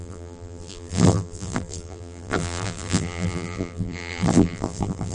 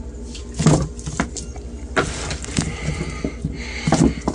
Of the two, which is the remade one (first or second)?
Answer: first